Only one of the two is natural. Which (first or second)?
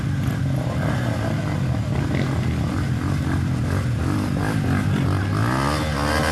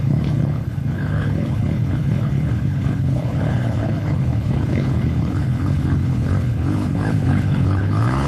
first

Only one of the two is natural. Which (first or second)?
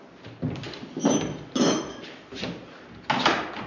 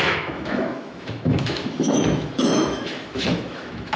first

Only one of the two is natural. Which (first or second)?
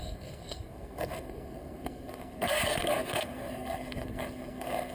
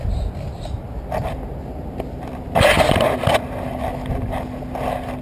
second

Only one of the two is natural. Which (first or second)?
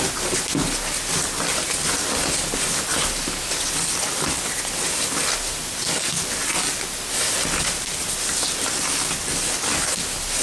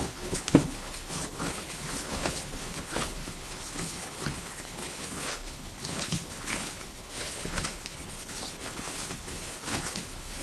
first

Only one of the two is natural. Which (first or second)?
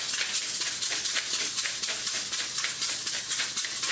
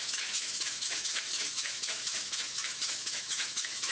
first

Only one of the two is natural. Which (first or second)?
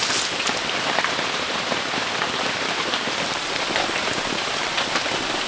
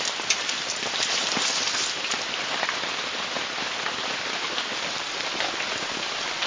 second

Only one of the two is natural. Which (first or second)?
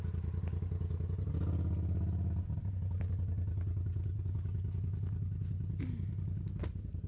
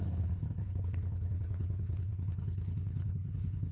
first